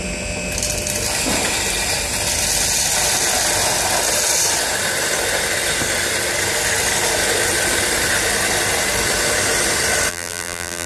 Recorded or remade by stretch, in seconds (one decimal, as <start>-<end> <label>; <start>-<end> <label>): 0.0-10.1 recorded; 10.1-10.9 remade